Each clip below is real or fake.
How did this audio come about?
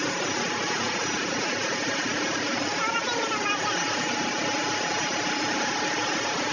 real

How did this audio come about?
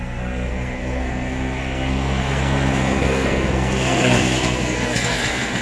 fake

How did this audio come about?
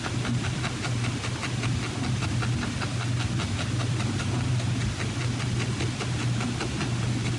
real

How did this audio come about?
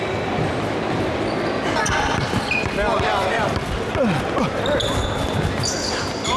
real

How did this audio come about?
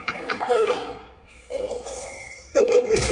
fake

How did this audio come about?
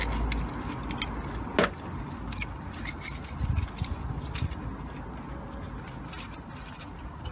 real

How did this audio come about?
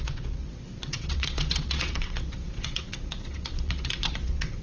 fake